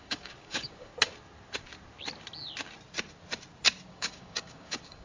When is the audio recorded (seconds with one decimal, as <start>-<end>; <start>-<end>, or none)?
0.9-3.9